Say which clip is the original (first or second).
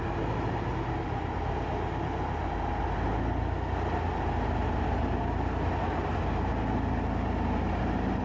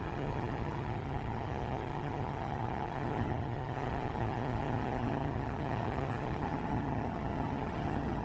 first